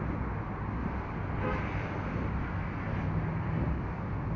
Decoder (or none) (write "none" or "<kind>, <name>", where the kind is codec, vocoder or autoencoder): none